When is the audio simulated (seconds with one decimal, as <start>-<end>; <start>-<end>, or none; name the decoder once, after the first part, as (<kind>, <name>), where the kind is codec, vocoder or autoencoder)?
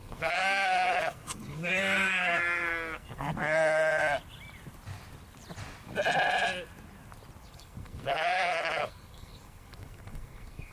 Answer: 0.0-4.0 (codec, SNAC); 7.4-10.7